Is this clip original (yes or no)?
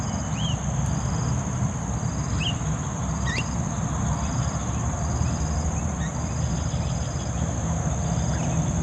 yes